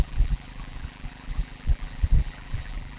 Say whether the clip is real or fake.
fake